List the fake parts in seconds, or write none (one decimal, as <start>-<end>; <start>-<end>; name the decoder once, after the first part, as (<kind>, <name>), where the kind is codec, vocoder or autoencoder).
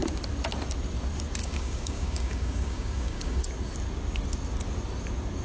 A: 1.4-3.4 (codec, DAC)